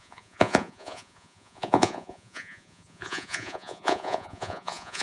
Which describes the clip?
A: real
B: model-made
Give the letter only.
B